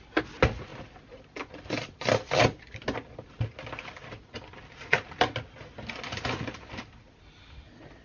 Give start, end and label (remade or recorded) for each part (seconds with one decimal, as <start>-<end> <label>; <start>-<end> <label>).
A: 0.0-8.0 recorded